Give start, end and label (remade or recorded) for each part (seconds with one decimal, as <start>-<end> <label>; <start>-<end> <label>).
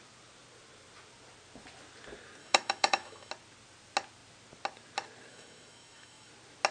0.0-2.4 recorded; 2.4-3.3 remade; 3.3-5.3 recorded; 5.3-6.3 remade; 6.3-6.7 recorded